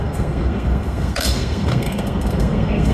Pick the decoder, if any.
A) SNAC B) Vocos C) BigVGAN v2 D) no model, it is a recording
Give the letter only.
A